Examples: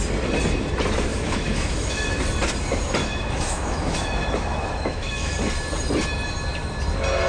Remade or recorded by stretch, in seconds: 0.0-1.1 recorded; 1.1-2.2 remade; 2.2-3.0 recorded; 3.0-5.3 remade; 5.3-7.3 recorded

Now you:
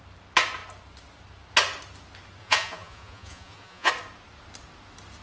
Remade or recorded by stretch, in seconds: 0.0-2.4 recorded; 2.4-3.9 remade; 3.9-5.2 recorded

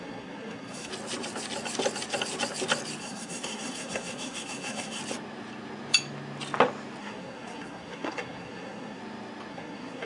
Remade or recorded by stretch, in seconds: 0.0-0.9 remade; 0.9-3.0 recorded; 3.0-5.0 remade; 5.0-7.0 recorded; 7.0-9.0 remade; 9.0-9.5 recorded; 9.5-10.1 remade

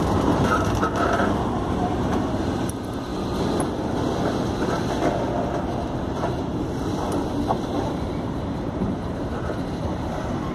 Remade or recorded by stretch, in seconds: 0.0-3.1 remade; 3.1-6.6 recorded; 6.6-10.5 remade

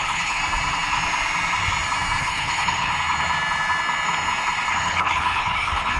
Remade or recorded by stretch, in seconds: 0.0-0.4 remade; 0.4-2.2 recorded; 2.2-2.9 remade; 2.9-4.7 recorded; 4.7-6.0 remade

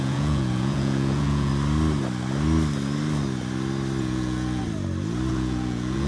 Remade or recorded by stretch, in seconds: 0.0-1.5 remade; 1.5-4.0 recorded; 4.0-4.6 remade; 4.6-5.3 recorded; 5.3-6.1 remade

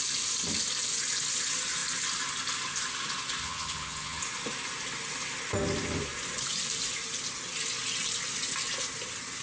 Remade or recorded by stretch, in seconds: 0.0-3.4 recorded; 3.4-4.2 remade; 4.2-9.4 recorded

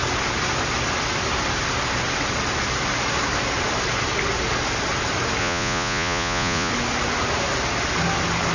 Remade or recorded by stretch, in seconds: 0.0-5.4 recorded; 5.4-6.7 remade; 6.7-8.5 recorded